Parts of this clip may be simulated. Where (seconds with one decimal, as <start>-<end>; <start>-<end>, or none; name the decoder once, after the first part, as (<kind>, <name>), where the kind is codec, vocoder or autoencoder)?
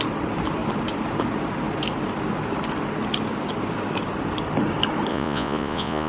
5.1-6.1 (vocoder, Vocos)